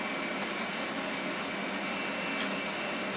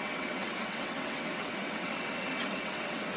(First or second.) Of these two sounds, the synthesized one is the second